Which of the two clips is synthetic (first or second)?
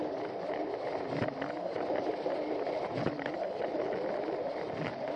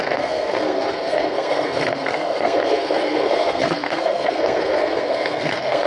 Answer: second